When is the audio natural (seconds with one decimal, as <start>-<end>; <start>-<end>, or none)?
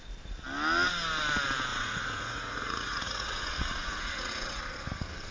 0.0-1.7; 4.6-5.3